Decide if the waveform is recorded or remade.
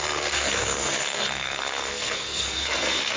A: remade